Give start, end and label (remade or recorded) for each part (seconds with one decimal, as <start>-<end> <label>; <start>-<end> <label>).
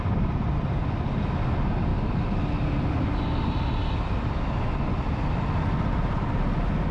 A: 0.0-6.9 recorded